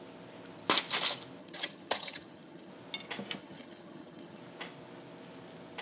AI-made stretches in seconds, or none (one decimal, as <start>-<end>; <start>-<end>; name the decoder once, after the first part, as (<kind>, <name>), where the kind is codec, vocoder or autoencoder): 1.4-2.7 (vocoder, HiFi-GAN); 3.4-4.4